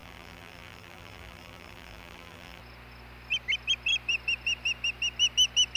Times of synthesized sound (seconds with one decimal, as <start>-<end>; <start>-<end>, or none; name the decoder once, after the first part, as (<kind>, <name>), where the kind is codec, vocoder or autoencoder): 0.0-2.6 (vocoder, BigVGAN v2)

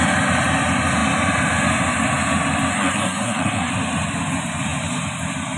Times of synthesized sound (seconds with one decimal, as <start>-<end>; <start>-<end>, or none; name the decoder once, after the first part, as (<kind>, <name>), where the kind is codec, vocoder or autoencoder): 2.7-3.7 (codec, SNAC)

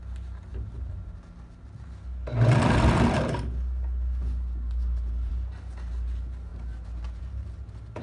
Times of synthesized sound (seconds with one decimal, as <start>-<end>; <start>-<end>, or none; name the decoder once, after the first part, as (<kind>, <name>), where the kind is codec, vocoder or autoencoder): none

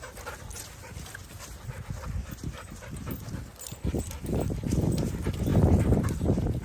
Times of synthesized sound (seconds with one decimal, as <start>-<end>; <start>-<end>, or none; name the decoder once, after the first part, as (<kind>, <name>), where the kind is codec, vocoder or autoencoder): none

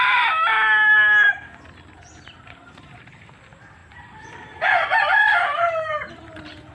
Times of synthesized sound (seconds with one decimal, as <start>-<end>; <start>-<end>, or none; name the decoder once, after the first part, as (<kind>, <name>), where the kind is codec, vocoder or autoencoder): 0.0-0.5 (vocoder, BigVGAN v2); 2.1-6.7

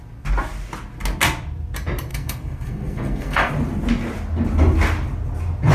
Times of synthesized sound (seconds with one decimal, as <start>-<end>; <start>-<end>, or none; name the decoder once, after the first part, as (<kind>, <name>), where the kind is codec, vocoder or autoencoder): 2.1-3.5 (codec, SNAC)

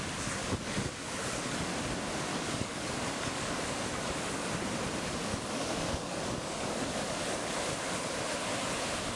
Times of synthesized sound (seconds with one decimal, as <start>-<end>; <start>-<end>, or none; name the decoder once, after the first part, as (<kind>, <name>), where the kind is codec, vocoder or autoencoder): 0.4-1.7 (codec, DAC); 2.3-4.5; 5.3-7.5